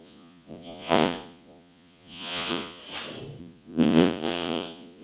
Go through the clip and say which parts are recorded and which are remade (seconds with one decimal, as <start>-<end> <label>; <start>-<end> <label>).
0.0-2.8 remade; 2.8-3.4 recorded; 3.4-5.0 remade